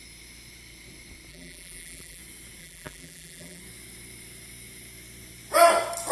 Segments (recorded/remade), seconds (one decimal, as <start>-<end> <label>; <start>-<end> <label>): 0.0-1.3 recorded; 1.3-2.2 remade; 2.2-2.6 recorded; 2.6-3.6 remade; 3.6-6.1 recorded